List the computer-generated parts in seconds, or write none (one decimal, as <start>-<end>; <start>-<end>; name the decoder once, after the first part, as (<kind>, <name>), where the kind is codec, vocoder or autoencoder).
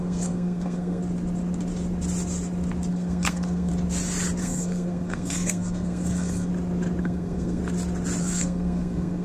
0.0-1.0 (codec, SNAC); 2.9-3.7; 4.4-6.5; 7.0-7.6; 8.2-9.2